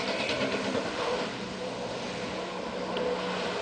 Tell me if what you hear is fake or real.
real